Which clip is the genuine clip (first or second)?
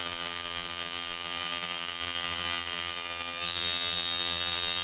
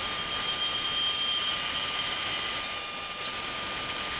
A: second